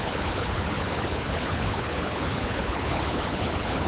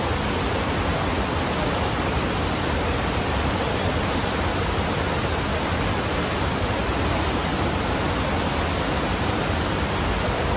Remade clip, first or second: first